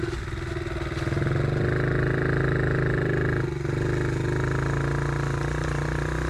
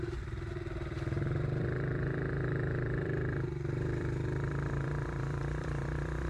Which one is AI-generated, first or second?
second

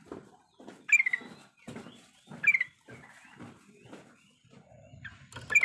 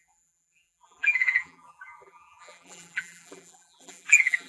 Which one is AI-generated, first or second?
second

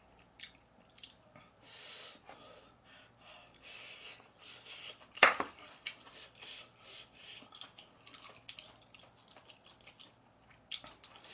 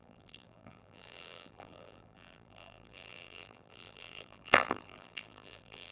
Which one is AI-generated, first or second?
second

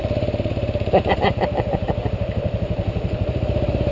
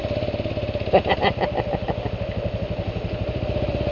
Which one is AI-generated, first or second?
first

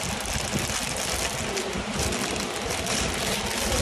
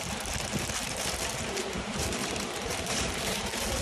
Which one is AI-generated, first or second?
second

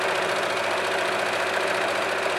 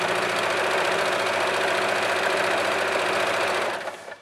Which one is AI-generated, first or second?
second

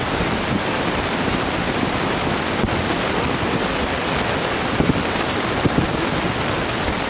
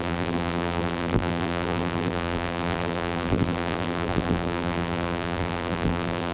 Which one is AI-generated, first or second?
second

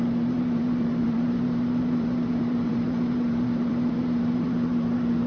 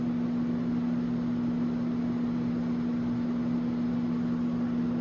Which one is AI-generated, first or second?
first